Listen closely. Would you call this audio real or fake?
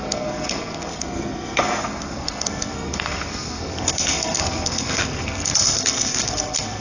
fake